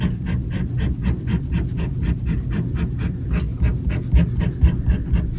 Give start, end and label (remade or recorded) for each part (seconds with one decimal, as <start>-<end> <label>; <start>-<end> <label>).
0.0-5.4 recorded